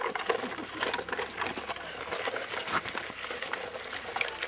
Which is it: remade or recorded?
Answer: recorded